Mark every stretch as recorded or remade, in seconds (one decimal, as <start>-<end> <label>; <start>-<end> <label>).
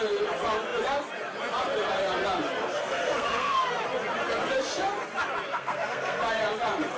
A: 0.0-2.6 recorded; 2.6-3.7 remade; 3.7-5.5 recorded; 5.5-6.2 remade; 6.2-7.0 recorded